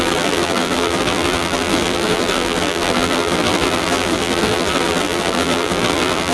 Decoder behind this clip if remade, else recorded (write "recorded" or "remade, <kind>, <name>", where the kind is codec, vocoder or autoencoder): remade, vocoder, BigVGAN v2